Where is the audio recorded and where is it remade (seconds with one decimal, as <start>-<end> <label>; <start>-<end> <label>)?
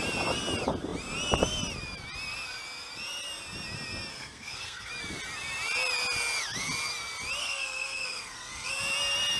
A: 0.0-4.1 recorded; 4.1-4.9 remade; 4.9-7.4 recorded; 7.4-8.7 remade; 8.7-9.4 recorded